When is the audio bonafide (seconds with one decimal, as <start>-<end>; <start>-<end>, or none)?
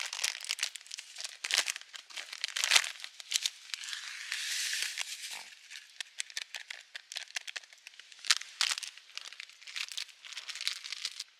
0.0-11.4